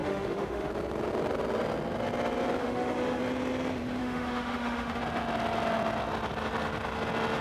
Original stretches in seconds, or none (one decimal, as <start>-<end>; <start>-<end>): 0.7-2.6; 3.2-4.0; 5.0-7.4